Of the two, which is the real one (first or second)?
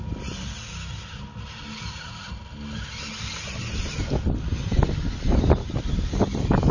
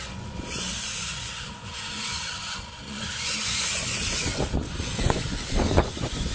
first